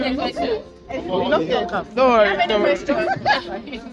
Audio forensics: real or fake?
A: real